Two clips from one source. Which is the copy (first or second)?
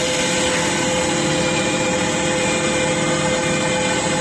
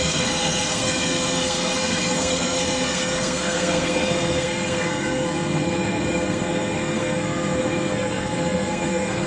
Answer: second